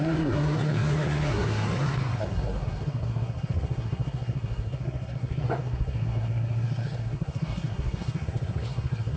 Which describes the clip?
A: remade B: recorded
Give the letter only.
A